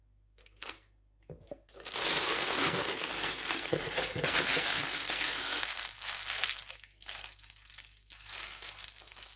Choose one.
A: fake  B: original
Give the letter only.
A